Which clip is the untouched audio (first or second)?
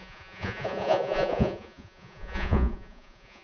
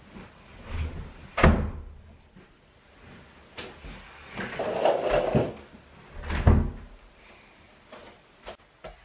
second